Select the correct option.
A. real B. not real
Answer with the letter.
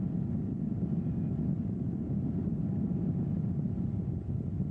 A